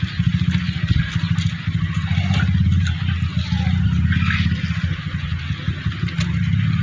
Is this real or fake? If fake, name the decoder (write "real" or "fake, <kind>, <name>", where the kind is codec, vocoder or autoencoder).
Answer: real